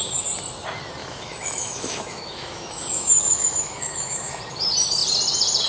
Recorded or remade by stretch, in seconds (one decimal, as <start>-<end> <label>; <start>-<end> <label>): 0.0-1.0 recorded; 1.0-4.4 remade; 4.4-5.7 recorded